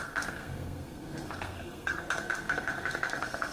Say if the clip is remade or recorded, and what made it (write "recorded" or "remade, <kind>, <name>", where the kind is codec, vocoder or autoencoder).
remade, codec, SNAC